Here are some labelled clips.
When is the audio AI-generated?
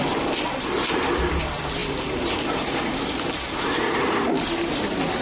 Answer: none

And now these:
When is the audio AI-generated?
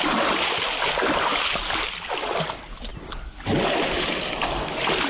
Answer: none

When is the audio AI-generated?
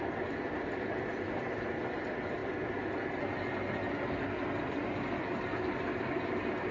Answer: none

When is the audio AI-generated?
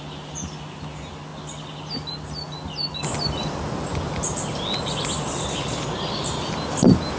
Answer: none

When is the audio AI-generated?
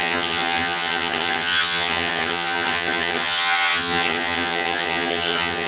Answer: 0.0-5.7 (vocoder, HiFi-GAN)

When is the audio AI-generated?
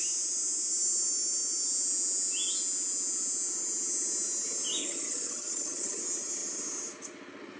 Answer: 4.8-6.0 (vocoder, HiFi-GAN)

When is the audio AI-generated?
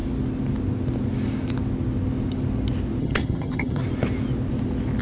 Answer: 3.0-3.8 (vocoder, HiFi-GAN)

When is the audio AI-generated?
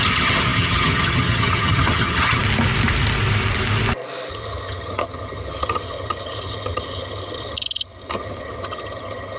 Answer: 0.0-2.4 (vocoder, HiFi-GAN); 4.3-9.4